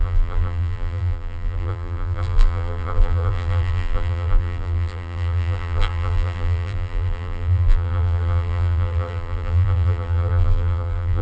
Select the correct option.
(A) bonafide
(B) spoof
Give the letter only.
B